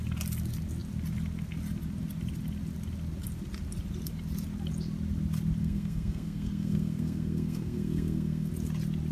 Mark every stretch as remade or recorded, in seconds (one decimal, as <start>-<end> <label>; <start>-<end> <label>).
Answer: 0.0-5.6 recorded; 5.6-8.5 remade; 8.5-9.1 recorded